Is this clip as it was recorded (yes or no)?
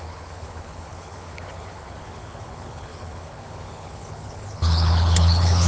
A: no